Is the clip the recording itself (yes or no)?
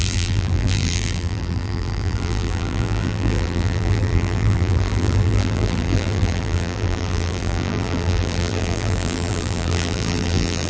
no